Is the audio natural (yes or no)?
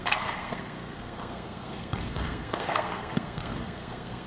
no